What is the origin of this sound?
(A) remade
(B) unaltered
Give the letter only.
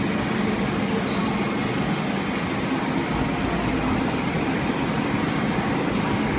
B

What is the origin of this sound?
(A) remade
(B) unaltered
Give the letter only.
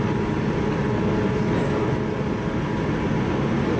B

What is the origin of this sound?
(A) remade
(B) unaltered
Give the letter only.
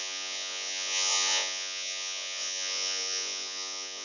A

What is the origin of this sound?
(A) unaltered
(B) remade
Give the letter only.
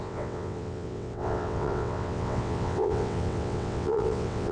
B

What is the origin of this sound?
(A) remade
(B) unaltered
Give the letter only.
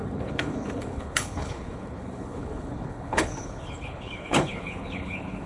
A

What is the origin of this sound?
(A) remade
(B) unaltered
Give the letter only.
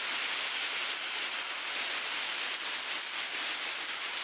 B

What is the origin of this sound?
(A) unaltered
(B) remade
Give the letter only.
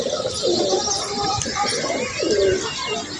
A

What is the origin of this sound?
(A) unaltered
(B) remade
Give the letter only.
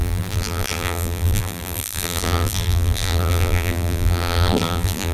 B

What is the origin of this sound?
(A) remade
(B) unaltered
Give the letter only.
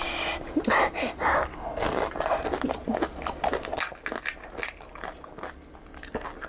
B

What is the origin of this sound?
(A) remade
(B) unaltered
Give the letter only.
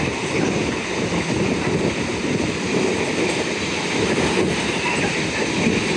B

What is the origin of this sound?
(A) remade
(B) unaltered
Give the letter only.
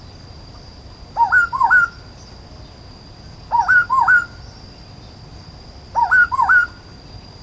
B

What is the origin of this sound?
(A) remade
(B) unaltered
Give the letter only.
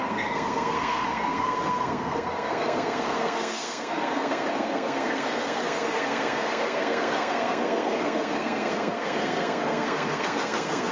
A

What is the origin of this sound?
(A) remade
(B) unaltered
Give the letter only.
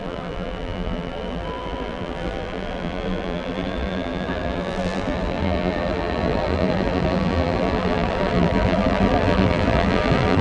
A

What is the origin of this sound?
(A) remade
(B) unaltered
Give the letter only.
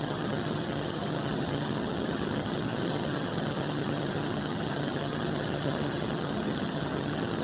A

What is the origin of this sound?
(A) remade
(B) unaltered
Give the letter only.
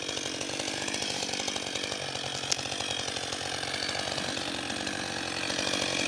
B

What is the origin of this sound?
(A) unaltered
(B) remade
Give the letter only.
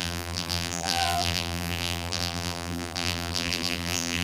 B